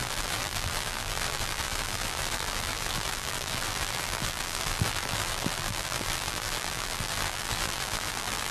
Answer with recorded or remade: remade